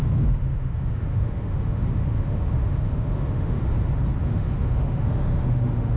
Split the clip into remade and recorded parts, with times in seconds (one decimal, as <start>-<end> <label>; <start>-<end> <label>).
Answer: 0.0-3.6 remade; 3.6-4.2 recorded; 4.2-6.0 remade